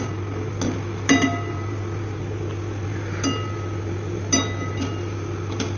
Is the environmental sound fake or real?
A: real